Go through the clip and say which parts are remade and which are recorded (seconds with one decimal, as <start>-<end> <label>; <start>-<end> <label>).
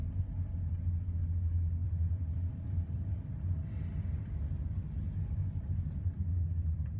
0.0-1.8 recorded; 1.8-6.0 remade; 6.0-7.0 recorded